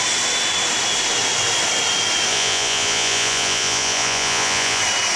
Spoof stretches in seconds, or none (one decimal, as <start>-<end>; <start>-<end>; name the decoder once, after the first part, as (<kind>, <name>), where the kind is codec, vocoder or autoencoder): 2.3-4.8 (vocoder, Vocos)

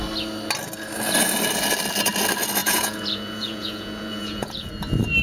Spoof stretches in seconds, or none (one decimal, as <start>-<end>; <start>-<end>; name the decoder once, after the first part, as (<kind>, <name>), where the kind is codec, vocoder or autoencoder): 2.6-4.7 (vocoder, Vocos)

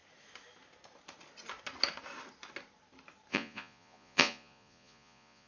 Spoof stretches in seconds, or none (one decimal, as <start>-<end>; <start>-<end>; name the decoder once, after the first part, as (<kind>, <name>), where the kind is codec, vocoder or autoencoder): 3.3-5.5 (vocoder, Vocos)

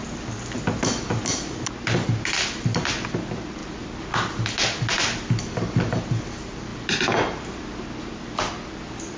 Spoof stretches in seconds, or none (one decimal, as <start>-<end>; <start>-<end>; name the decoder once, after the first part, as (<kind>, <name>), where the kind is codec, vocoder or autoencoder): none

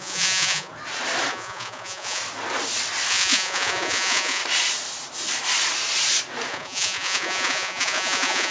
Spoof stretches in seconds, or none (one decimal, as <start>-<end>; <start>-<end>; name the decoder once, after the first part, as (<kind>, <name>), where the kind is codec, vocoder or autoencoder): 0.0-0.7 (vocoder, Vocos); 1.3-2.2; 3.1-4.4; 6.5-8.5

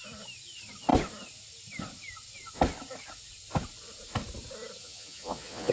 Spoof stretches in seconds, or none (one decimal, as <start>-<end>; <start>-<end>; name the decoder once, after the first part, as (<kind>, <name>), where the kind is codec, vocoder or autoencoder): 4.8-5.7 (vocoder, Vocos)